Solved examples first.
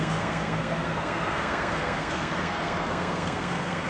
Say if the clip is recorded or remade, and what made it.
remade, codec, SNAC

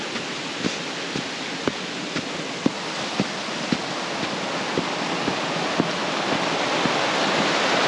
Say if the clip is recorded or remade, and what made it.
recorded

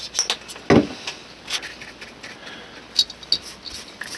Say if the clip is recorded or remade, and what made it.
recorded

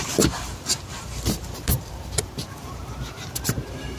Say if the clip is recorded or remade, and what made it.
remade, vocoder, BigVGAN v2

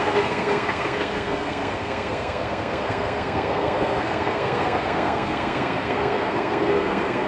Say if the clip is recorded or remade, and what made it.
remade, codec, SNAC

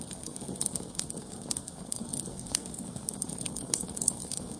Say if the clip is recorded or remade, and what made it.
remade, codec, SNAC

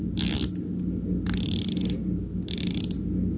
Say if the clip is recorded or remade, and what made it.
recorded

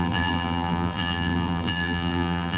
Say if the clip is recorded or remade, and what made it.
remade, vocoder, BigVGAN v2